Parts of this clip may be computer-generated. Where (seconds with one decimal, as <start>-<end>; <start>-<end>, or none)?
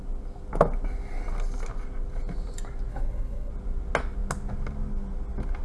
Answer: 2.9-3.5